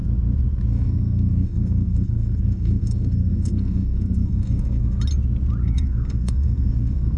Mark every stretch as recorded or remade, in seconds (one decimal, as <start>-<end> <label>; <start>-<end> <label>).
0.0-0.7 recorded; 0.7-5.0 remade; 5.0-5.6 recorded; 5.6-7.2 remade